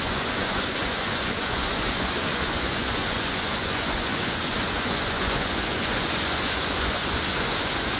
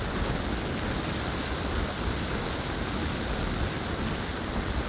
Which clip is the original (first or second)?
second